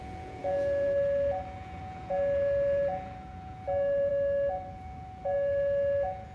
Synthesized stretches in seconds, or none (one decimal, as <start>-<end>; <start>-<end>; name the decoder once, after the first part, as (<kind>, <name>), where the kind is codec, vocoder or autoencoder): 0.0-4.1 (vocoder, Vocos); 4.7-6.3